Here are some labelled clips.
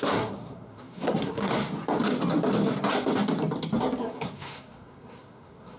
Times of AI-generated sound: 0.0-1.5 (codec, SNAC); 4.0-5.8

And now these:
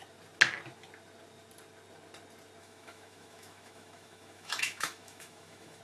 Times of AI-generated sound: 2.6-5.8 (autoencoder, DAC-VAE)

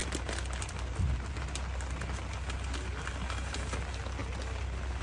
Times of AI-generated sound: none

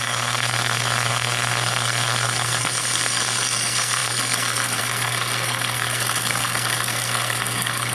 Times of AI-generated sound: 0.0-7.9 (codec, SNAC)

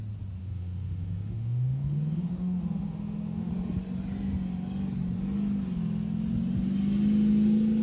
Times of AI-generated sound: 0.4-3.5 (autoencoder, DAC-VAE)

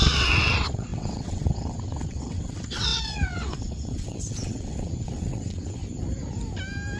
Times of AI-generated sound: 0.0-5.8 (vocoder, WaveNeXt)

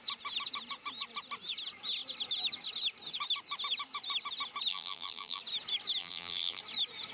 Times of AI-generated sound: 4.7-5.4 (vocoder, BigVGAN v2); 6.0-6.6